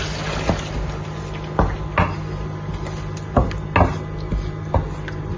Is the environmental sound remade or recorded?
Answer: recorded